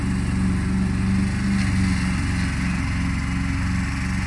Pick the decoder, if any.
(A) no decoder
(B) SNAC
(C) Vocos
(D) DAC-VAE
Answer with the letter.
A